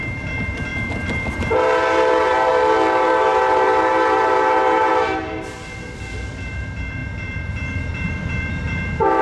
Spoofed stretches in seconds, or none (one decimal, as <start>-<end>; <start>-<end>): 0.0-0.7; 1.3-9.2